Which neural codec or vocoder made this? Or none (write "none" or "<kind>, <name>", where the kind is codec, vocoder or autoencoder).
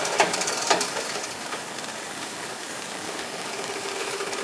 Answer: codec, DAC